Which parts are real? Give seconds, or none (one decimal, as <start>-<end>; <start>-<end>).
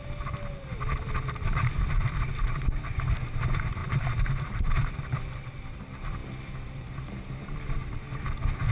0.0-3.8; 4.7-8.7